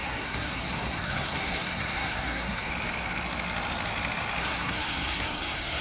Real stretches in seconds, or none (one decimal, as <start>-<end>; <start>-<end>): 2.7-4.4